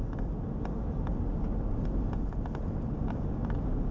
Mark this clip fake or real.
real